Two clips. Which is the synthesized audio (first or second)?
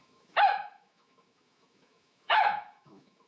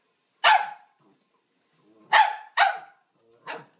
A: first